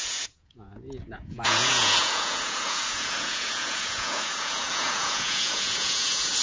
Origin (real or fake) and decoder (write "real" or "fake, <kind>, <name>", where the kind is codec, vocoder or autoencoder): fake, vocoder, Vocos